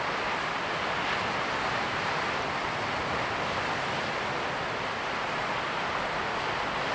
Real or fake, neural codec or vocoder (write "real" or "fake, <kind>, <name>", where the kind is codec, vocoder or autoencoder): real